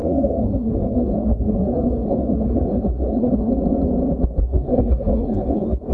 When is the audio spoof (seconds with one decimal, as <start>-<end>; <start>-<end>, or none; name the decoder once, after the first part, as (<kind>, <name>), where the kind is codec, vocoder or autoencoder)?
0.0-3.5 (codec, SNAC); 4.4-5.9